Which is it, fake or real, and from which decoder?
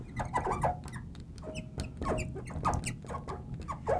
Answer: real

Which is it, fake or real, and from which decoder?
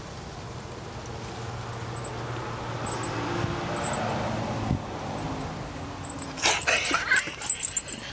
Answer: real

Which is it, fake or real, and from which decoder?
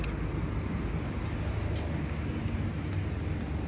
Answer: real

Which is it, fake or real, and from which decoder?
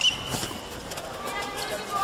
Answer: real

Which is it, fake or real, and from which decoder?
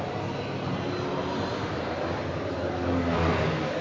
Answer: real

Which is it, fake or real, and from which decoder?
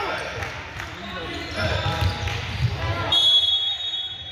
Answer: real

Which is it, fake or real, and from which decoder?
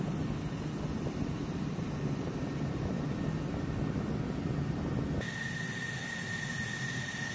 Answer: real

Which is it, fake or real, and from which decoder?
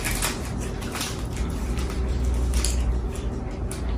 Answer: real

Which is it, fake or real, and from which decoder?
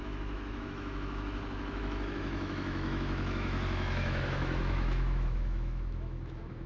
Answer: fake, autoencoder, DAC-VAE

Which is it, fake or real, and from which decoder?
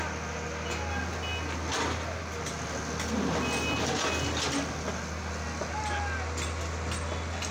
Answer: real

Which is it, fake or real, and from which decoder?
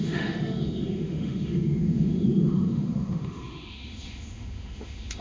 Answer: fake, autoencoder, DAC-VAE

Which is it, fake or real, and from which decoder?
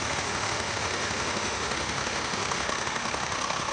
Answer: fake, autoencoder, DAC-VAE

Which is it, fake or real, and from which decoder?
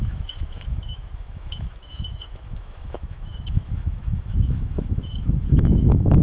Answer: fake, autoencoder, DAC-VAE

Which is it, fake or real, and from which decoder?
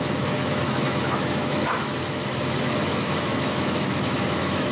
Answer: fake, autoencoder, DAC-VAE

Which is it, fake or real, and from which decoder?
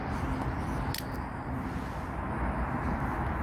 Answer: real